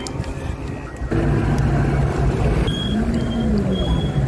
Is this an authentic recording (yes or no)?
yes